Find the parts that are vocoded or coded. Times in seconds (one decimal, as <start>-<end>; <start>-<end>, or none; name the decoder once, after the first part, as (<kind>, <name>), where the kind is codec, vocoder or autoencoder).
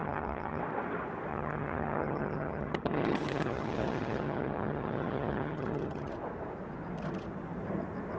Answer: 0.0-0.6 (vocoder, HiFi-GAN); 1.3-6.1